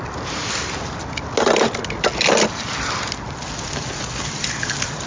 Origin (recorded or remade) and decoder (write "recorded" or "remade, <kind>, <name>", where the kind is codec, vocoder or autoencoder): recorded